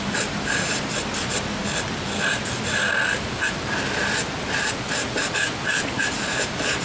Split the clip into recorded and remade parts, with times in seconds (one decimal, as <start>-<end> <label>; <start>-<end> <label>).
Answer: 0.0-1.6 remade; 1.6-5.7 recorded; 5.7-6.8 remade